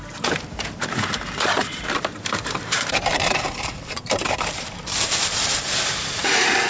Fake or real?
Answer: fake